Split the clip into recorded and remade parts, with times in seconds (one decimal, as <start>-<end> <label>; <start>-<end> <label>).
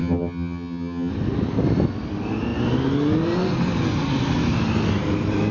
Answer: 0.0-1.1 remade; 1.1-5.5 recorded